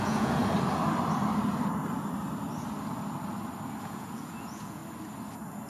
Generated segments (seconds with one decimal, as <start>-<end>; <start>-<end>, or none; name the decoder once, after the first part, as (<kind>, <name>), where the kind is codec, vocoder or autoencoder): 0.0-0.4 (vocoder, Vocos); 3.8-4.8